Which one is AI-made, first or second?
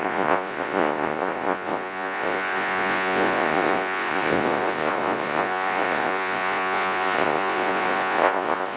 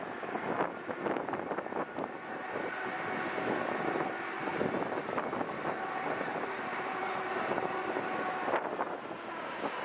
first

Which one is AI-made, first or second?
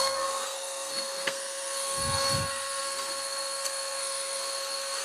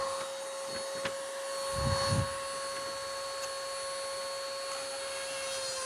first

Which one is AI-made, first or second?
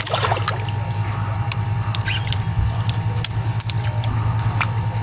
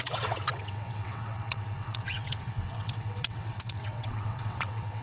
second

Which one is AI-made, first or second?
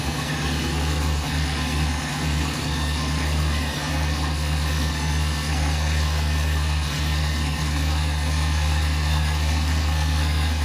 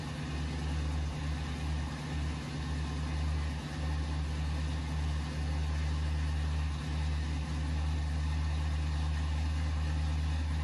first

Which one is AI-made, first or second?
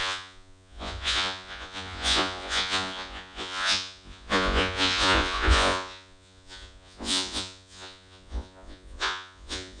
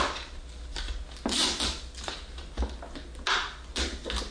first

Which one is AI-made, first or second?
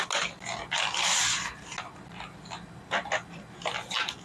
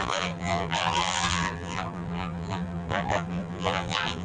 second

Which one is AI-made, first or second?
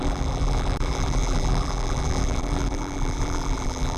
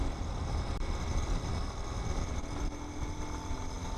first